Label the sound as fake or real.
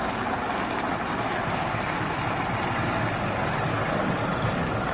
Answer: real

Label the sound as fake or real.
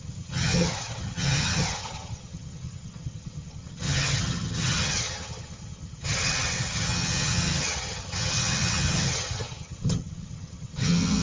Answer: fake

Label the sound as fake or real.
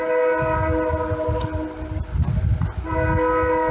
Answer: real